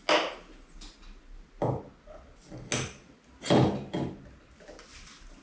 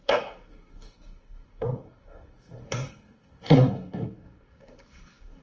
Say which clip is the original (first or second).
first